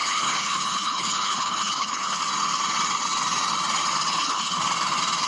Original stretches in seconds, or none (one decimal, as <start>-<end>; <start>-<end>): 2.2-4.1; 4.6-5.3